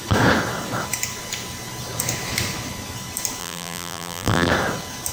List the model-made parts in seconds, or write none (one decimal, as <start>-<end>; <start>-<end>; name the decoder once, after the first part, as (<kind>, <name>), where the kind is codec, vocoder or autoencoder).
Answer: 3.4-4.5 (vocoder, BigVGAN v2)